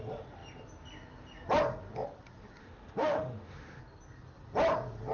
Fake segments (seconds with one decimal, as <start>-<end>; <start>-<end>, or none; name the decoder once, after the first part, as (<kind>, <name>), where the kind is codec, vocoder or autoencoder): 2.6-3.8 (autoencoder, DAC-VAE)